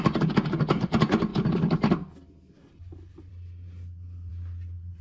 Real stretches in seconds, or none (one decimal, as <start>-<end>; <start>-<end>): 0.0-5.0